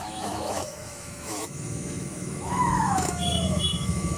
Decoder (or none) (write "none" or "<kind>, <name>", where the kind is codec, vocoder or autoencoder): autoencoder, DAC-VAE